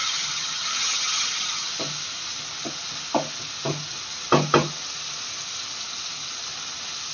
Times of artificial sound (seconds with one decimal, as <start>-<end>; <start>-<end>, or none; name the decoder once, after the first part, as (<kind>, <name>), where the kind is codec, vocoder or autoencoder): 0.0-1.7 (vocoder, HiFi-GAN)